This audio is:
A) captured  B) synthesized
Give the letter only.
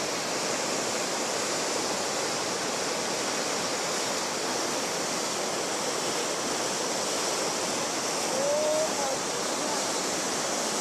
A